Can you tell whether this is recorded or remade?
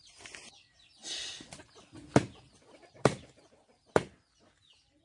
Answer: recorded